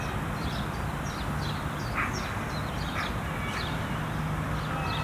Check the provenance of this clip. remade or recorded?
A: recorded